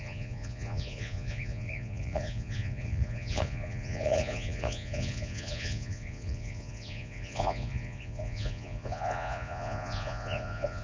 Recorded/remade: remade